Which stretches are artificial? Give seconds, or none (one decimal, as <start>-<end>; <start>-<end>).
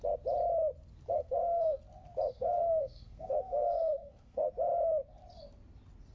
1.1-1.8; 2.3-4.5